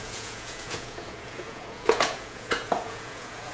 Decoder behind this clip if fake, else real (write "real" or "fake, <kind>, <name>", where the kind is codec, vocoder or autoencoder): fake, vocoder, Vocos